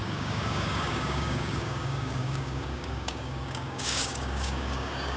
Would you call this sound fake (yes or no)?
yes